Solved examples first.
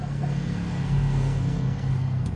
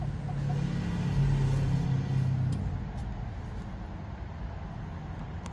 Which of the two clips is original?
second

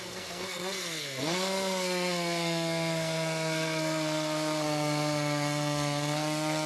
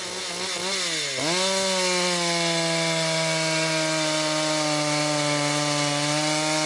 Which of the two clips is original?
second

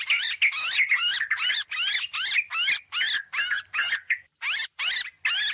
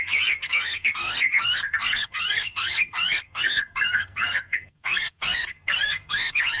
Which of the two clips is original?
first